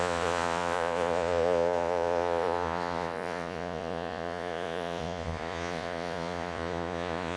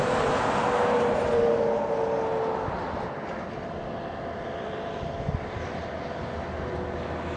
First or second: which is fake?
first